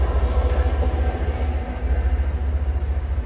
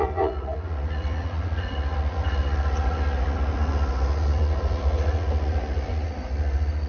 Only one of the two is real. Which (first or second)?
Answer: first